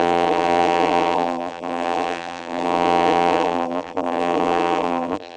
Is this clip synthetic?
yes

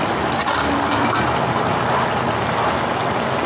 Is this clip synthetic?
no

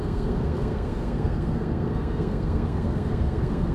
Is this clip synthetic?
yes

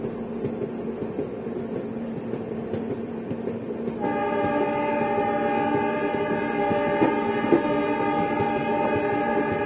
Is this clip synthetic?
no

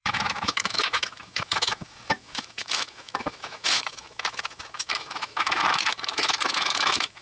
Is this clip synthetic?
yes